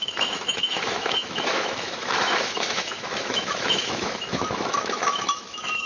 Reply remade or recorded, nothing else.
remade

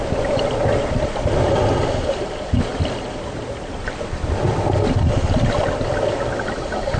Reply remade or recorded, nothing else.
recorded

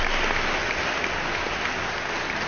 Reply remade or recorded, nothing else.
recorded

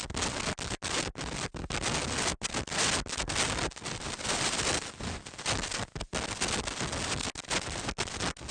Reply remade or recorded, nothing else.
recorded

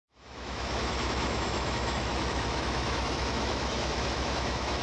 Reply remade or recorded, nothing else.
remade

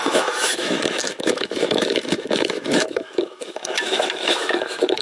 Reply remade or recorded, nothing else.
remade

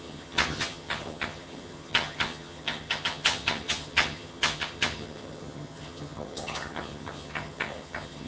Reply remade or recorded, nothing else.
remade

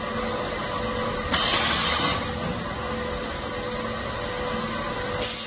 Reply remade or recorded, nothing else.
recorded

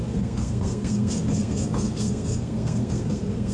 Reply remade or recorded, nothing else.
remade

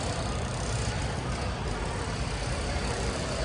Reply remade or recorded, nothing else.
recorded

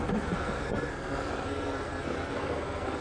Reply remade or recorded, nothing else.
remade